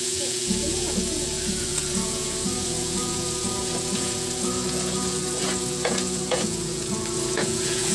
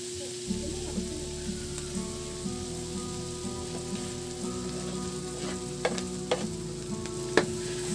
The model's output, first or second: first